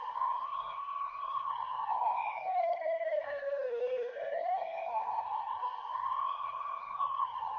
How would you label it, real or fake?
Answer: fake